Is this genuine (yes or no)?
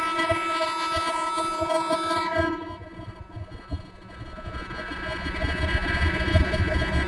no